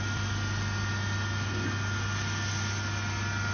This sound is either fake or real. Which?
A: real